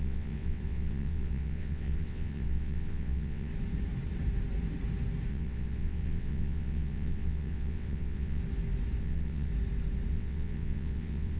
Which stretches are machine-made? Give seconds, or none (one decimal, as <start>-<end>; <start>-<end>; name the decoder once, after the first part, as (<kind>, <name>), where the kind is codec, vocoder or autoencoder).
0.0-3.5 (vocoder, WaveNeXt); 5.3-8.4; 9.0-9.5; 10.1-11.4